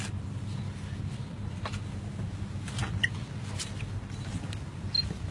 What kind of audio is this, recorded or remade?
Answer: recorded